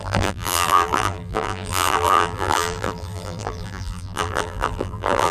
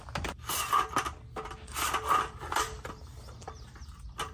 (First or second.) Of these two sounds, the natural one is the second